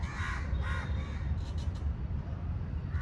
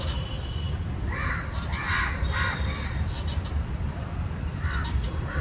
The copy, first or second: second